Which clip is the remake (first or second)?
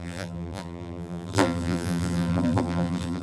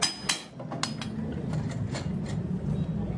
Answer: first